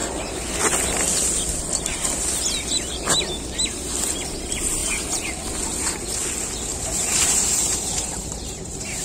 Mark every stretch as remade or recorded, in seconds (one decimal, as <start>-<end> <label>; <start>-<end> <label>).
0.0-6.7 recorded; 6.7-9.0 remade